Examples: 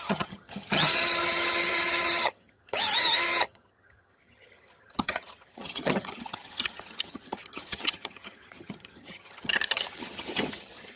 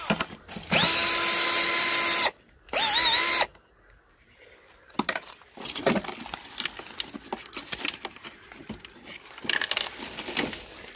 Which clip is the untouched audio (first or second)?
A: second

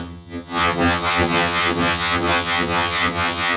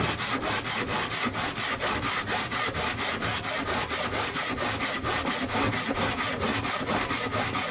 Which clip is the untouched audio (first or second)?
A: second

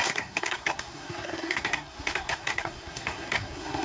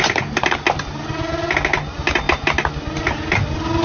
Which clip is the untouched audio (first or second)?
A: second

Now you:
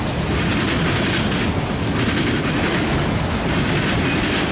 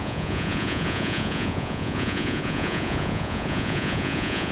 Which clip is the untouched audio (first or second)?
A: first